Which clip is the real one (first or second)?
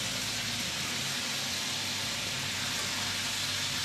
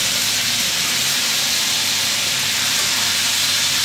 first